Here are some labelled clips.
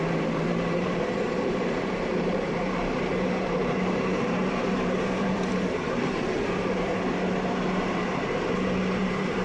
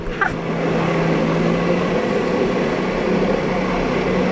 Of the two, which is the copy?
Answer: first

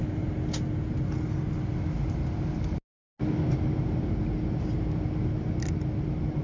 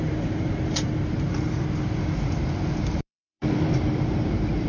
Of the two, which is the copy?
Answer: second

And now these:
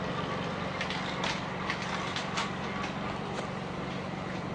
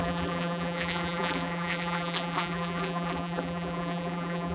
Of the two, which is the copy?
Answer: second